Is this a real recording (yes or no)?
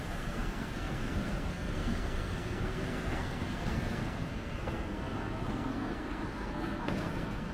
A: no